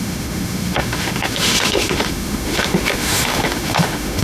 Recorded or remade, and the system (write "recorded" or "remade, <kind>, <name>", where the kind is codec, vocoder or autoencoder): remade, autoencoder, DAC-VAE